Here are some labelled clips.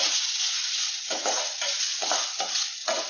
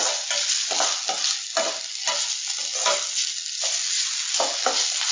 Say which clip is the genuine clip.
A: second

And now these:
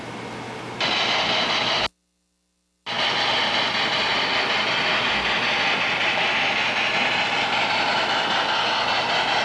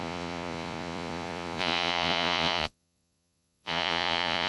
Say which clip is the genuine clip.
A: first